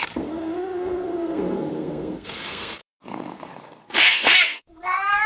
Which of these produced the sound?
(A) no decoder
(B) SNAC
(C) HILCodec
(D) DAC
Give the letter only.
B